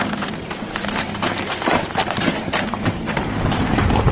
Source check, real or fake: fake